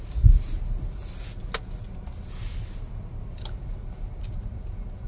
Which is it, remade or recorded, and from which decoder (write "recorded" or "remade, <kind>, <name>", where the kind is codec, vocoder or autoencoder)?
recorded